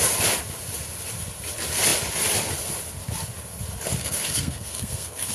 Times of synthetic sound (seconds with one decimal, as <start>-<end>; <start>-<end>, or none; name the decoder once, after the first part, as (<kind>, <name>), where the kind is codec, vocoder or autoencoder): 4.0-5.3 (codec, SNAC)

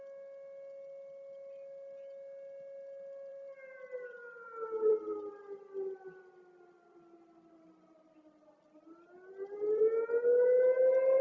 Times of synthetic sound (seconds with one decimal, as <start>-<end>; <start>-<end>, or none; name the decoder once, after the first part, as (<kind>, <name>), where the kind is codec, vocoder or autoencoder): 3.3-6.2 (vocoder, BigVGAN v2); 9.3-9.8